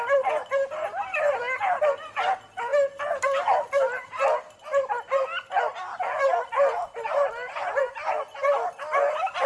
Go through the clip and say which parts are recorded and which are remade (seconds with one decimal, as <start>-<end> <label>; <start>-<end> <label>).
0.0-9.5 recorded